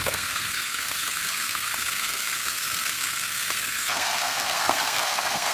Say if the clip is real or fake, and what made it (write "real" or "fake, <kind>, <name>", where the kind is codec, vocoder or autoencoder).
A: fake, codec, SNAC